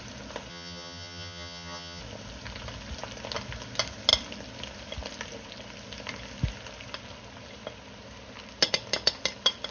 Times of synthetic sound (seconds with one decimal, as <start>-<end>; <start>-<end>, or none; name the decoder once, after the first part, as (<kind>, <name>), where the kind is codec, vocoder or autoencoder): 0.5-2.0 (vocoder, HiFi-GAN)